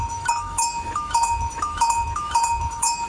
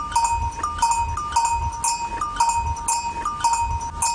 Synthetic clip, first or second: first